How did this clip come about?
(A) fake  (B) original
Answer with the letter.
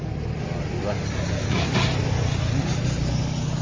B